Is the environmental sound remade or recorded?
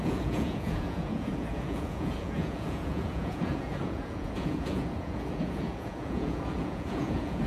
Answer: remade